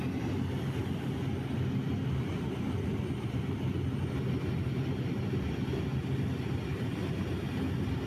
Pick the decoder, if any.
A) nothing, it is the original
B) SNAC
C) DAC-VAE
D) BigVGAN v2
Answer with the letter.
A